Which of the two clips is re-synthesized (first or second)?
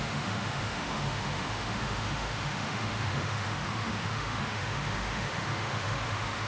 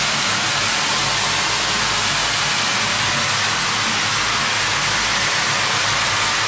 first